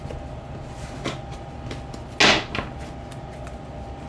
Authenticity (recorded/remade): recorded